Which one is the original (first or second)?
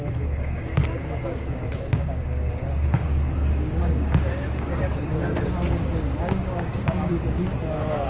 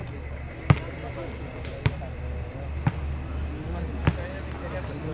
second